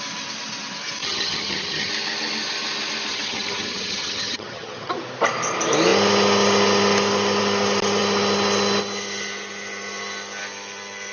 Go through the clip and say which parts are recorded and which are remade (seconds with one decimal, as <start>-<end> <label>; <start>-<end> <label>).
0.0-1.0 recorded; 1.0-1.9 remade; 1.9-3.1 recorded; 3.1-4.9 remade; 4.9-11.1 recorded